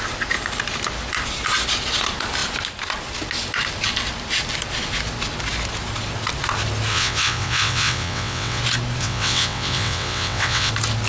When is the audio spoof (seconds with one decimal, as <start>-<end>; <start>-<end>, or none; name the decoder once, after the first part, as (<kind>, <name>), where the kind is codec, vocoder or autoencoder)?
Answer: 6.9-8.6 (vocoder, WaveNeXt); 9.0-10.7